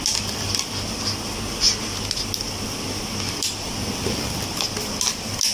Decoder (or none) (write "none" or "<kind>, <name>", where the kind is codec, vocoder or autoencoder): none